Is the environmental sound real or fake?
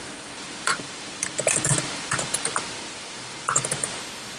fake